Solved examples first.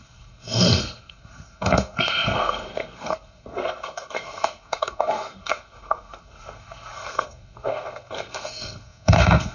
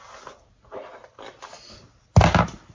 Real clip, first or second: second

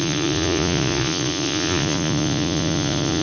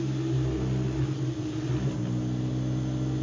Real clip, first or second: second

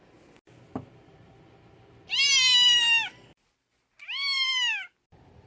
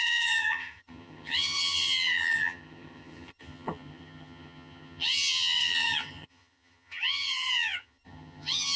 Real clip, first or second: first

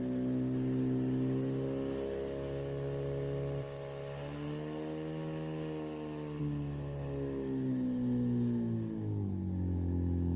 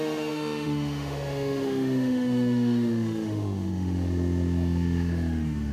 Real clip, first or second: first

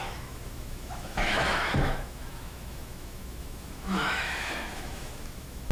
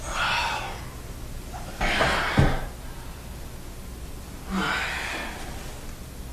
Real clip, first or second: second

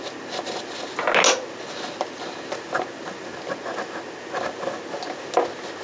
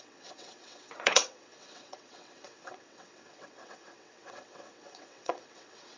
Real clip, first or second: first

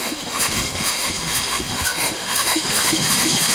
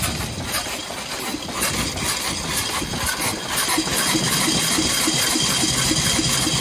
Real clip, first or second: second